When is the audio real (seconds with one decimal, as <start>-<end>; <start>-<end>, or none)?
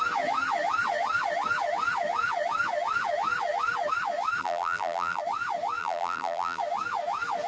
0.0-4.4; 5.2-5.8; 6.6-7.5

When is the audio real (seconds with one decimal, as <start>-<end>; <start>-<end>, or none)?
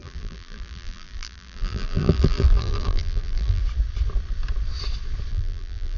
3.6-5.3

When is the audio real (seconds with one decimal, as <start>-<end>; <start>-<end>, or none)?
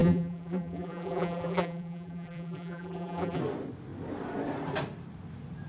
3.4-5.7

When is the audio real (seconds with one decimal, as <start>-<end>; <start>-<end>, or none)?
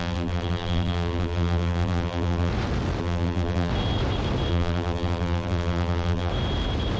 2.5-3.0; 3.7-4.5; 6.3-7.0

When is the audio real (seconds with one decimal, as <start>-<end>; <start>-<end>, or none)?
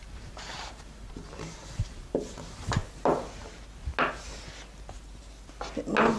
2.8-6.2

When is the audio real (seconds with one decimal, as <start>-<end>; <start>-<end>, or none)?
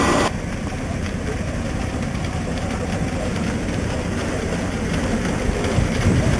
none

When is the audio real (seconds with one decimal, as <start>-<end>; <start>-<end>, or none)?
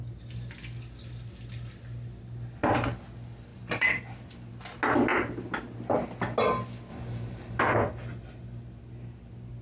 0.0-3.5; 4.5-6.9; 7.6-9.6